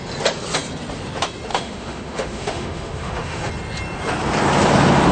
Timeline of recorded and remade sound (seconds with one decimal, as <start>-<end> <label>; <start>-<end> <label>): 0.0-1.5 recorded; 1.5-3.5 remade; 3.5-5.1 recorded